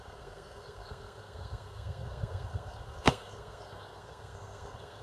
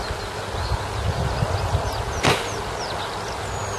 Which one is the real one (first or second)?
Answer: second